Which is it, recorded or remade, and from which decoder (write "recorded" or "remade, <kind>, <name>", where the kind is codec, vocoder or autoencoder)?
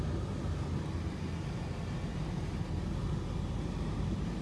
recorded